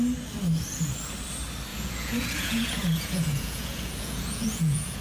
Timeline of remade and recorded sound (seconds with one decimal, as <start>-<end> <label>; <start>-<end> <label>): 0.0-1.7 recorded; 1.7-5.0 remade

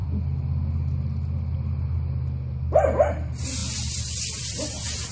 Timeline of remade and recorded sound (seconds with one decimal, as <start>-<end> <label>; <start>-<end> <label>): 0.0-5.1 recorded

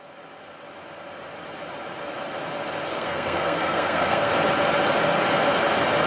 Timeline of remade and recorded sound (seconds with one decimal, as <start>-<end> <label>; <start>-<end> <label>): 0.0-2.9 recorded; 2.9-4.3 remade; 4.3-6.1 recorded